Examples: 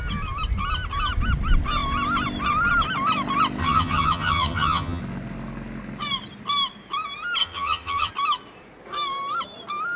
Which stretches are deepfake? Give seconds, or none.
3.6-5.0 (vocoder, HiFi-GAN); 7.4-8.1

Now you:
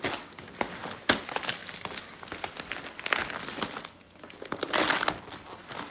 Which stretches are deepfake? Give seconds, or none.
none

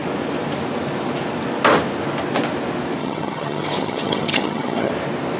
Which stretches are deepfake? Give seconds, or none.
3.0-4.9 (vocoder, HiFi-GAN)

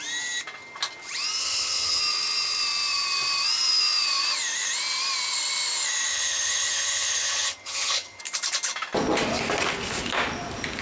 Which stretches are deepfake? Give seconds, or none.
1.4-2.0 (vocoder, HiFi-GAN); 6.1-8.2

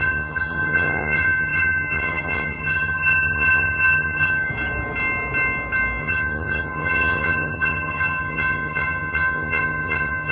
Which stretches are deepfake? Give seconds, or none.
0.0-4.5 (vocoder, HiFi-GAN); 6.0-10.3

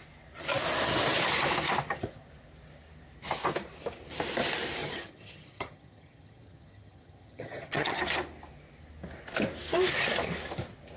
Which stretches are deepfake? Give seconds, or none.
4.8-8.0 (vocoder, HiFi-GAN)

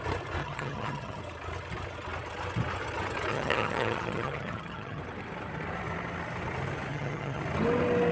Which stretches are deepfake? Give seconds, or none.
0.4-1.2 (vocoder, HiFi-GAN); 3.3-5.0; 6.9-7.4

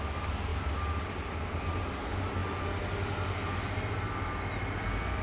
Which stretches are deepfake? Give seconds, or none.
none